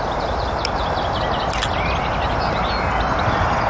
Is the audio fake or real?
real